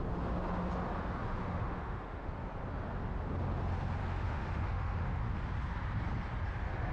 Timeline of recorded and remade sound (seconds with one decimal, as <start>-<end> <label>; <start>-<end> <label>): 0.0-1.4 recorded; 1.4-2.3 remade; 2.3-4.0 recorded; 4.0-5.2 remade; 5.2-6.9 recorded